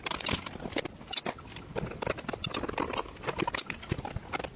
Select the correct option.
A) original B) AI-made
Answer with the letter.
A